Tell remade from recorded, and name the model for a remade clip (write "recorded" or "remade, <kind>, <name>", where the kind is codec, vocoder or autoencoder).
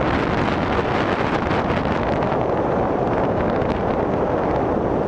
recorded